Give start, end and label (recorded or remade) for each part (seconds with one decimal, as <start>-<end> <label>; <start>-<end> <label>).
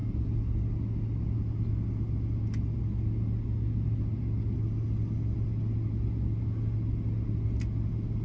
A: 0.0-8.2 recorded